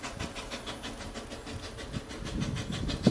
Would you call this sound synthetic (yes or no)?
no